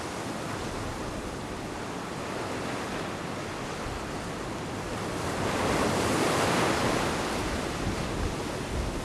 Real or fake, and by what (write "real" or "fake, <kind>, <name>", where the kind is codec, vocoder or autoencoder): real